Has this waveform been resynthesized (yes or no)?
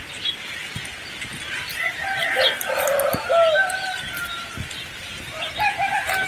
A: no